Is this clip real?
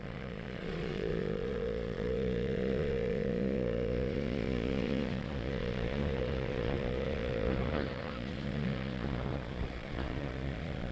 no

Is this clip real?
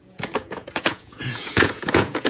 no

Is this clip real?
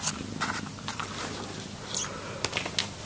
yes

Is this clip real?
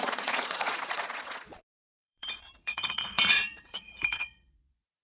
no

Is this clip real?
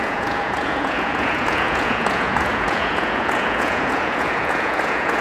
no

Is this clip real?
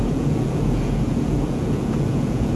no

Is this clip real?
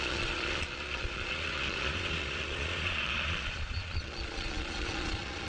no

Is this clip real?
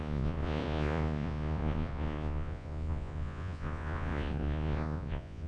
no